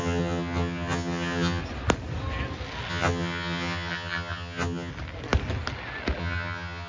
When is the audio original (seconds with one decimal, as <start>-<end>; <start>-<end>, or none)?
1.6-2.9; 4.9-6.2

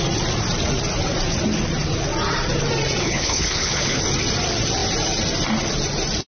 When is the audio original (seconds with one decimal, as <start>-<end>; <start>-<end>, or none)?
0.0-3.0; 4.0-6.4

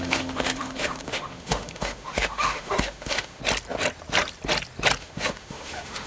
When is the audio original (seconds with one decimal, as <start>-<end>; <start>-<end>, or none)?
3.4-5.0

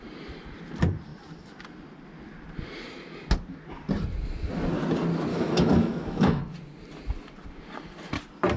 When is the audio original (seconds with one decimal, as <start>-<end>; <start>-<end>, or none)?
0.0-5.3; 6.4-8.6

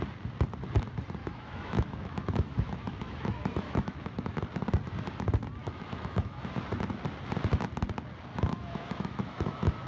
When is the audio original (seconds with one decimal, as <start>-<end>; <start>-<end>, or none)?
0.0-1.2; 4.4-5.6; 6.5-8.3

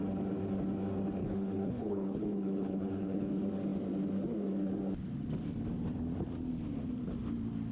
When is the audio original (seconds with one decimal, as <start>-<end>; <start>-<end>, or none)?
0.0-1.2; 3.3-7.7

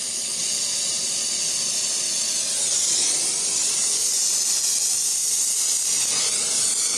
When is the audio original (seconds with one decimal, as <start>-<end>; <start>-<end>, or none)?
0.0-7.0